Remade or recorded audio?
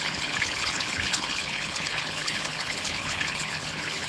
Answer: remade